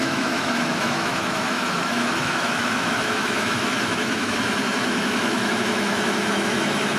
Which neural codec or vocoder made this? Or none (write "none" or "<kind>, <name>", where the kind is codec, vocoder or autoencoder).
autoencoder, DAC-VAE